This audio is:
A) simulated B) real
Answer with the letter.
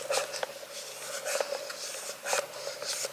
B